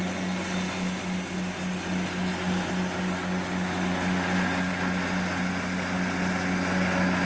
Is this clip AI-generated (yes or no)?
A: no